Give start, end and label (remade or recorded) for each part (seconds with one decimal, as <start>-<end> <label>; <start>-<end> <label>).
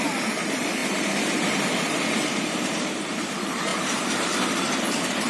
0.0-3.7 remade; 3.7-4.6 recorded; 4.6-5.3 remade